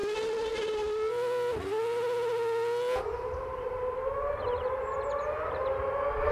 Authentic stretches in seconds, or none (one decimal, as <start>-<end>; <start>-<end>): 0.0-6.3